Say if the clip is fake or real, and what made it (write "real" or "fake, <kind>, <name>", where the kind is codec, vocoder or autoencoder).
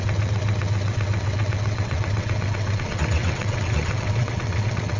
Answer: fake, vocoder, WaveNeXt